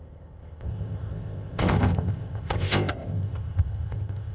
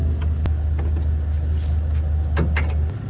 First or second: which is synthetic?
first